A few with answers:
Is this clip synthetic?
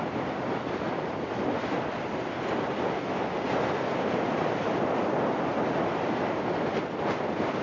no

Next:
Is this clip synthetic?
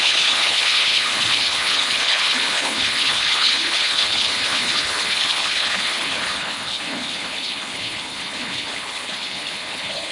yes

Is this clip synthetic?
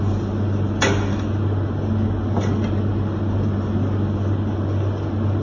no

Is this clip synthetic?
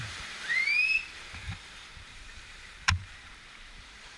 yes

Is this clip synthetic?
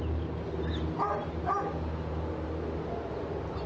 no